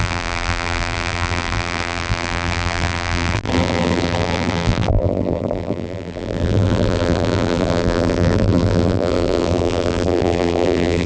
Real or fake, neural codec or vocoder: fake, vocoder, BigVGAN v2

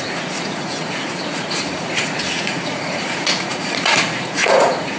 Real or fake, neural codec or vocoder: fake, vocoder, Vocos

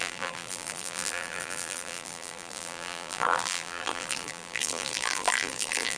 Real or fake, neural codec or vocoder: fake, vocoder, BigVGAN v2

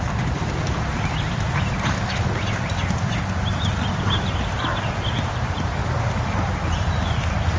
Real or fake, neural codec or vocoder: real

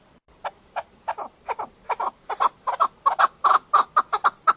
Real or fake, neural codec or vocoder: real